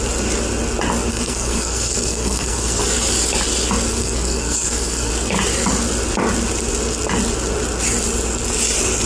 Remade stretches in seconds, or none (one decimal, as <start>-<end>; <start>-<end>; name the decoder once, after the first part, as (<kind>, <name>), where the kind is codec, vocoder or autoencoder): 1.1-2.8 (codec, SNAC); 4.0-5.1